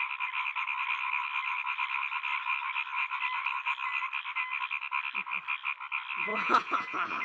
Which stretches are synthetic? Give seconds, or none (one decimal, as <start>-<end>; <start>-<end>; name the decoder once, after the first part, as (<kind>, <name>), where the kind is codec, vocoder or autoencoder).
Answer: 6.3-7.2 (vocoder, Vocos)

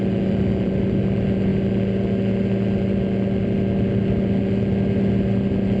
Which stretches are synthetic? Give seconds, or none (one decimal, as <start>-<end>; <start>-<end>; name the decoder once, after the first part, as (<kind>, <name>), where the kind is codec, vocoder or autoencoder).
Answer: none

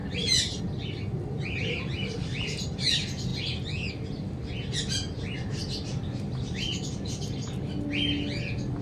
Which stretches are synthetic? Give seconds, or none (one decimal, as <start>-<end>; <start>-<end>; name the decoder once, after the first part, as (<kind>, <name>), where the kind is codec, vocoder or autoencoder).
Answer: 0.0-0.6 (vocoder, BigVGAN v2)

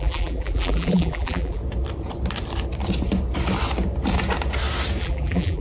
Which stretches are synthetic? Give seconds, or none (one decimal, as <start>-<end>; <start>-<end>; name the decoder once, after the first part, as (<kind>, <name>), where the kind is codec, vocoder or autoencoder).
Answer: 0.0-1.6 (vocoder, BigVGAN v2); 5.0-5.6

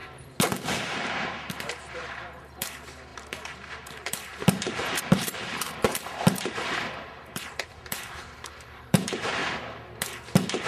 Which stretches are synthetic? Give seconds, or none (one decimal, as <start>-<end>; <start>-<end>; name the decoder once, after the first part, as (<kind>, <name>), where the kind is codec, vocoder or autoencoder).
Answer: 0.8-9.4 (vocoder, BigVGAN v2)

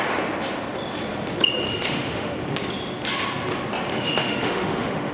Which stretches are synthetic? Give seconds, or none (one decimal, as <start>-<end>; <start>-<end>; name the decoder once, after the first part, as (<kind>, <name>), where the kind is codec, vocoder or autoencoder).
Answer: 1.7-2.3 (autoencoder, DAC-VAE); 3.9-5.1